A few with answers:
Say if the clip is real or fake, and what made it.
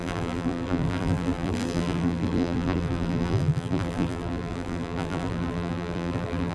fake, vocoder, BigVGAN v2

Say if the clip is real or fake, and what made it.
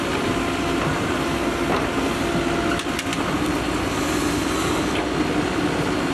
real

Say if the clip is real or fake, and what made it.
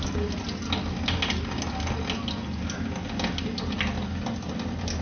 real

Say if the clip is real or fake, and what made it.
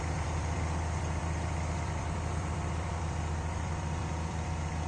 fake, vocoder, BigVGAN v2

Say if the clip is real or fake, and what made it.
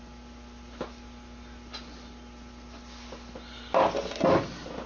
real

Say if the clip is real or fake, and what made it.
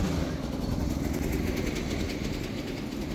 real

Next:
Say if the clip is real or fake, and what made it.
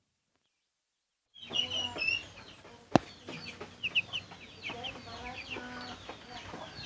real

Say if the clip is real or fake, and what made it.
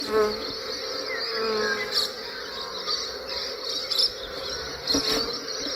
real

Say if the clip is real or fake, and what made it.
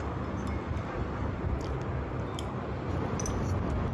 real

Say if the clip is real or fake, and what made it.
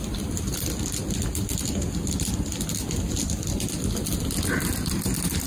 real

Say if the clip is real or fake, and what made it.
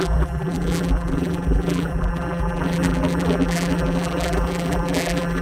fake, vocoder, BigVGAN v2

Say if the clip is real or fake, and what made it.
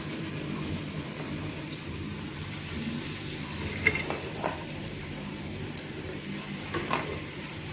fake, vocoder, BigVGAN v2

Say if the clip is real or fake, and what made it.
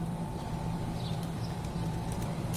fake, vocoder, BigVGAN v2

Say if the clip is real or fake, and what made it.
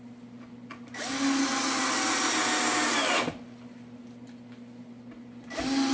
real